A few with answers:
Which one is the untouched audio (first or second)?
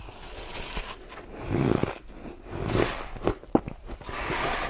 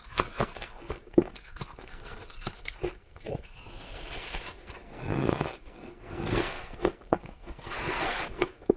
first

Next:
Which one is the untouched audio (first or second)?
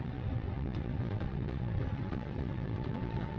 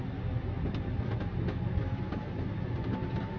second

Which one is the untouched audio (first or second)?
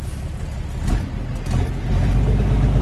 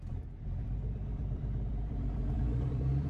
first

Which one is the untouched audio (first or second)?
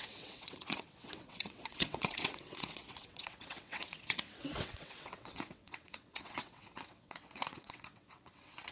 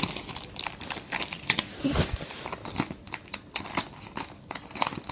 second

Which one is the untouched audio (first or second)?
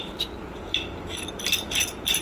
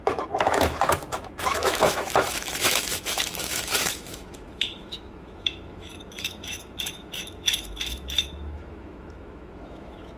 first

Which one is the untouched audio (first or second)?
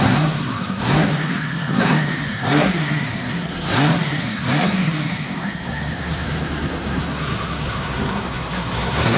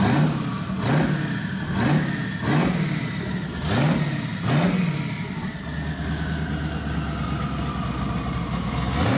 second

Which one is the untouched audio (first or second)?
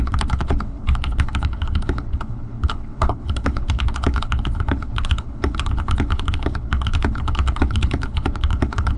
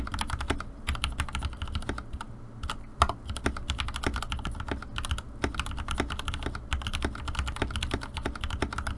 second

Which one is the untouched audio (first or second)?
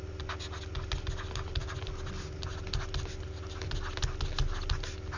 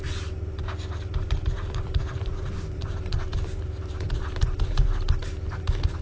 first